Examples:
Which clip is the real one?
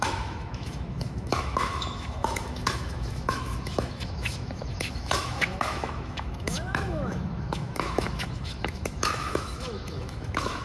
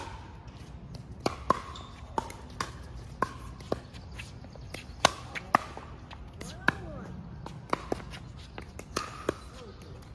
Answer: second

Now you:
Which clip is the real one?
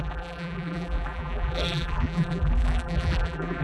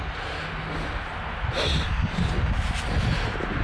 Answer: second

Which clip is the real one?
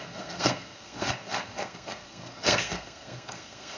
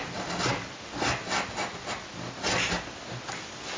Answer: second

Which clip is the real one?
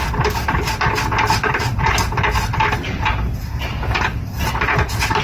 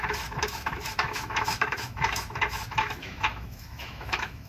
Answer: first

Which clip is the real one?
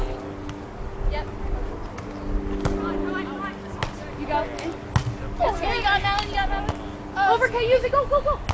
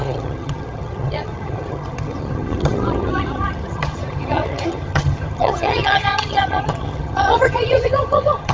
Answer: first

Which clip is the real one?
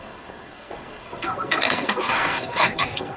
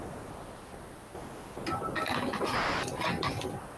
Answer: second